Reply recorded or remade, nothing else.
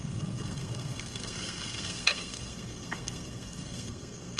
remade